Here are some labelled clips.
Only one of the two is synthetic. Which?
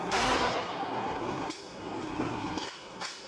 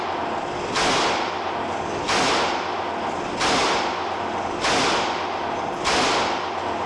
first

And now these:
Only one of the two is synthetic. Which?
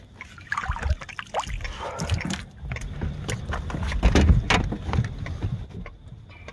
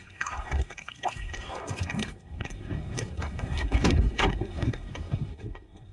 second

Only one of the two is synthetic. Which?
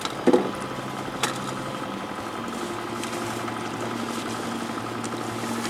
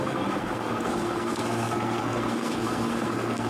second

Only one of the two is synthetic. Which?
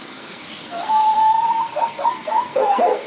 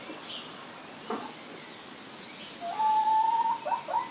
first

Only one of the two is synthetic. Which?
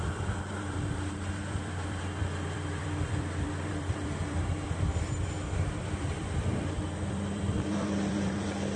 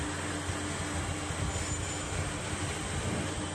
first